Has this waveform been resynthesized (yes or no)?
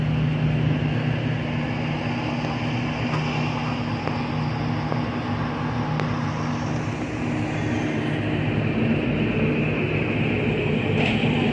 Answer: no